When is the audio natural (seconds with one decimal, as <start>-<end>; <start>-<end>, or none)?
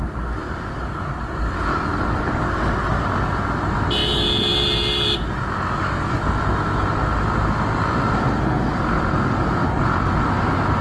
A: 0.0-10.8